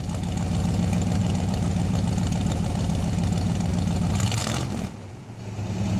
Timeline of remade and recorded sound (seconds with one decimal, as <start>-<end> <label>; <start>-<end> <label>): 0.0-1.2 recorded; 1.2-3.7 remade; 3.7-4.4 recorded; 4.4-5.4 remade; 5.4-6.0 recorded